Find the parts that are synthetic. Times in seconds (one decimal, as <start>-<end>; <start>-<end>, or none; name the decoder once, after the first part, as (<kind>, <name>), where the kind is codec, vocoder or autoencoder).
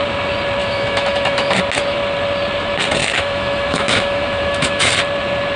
0.6-1.6 (autoencoder, DAC-VAE); 3.0-4.9